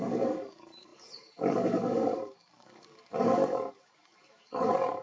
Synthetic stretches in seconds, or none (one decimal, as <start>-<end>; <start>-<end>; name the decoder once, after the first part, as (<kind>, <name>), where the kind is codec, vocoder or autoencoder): 0.0-5.0 (codec, DAC)